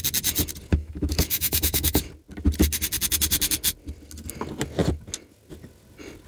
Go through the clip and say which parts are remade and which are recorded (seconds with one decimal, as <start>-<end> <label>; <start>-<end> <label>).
0.0-0.7 recorded; 0.7-2.1 remade; 2.1-6.3 recorded